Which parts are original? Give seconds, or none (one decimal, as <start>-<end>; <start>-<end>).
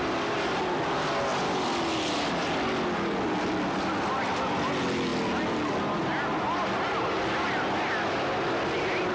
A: 0.0-9.1